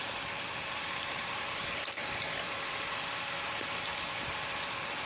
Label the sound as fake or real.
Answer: fake